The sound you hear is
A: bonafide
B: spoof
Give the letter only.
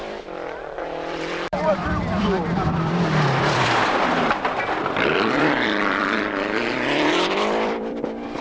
B